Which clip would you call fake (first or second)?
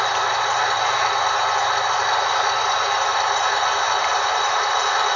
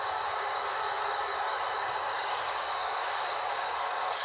second